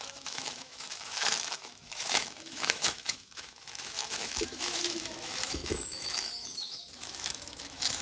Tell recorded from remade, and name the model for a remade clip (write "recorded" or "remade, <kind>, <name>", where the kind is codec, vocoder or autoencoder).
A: remade, autoencoder, DAC-VAE